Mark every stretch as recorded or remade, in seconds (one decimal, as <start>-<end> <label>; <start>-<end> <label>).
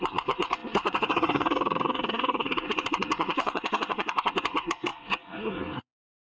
0.0-6.3 remade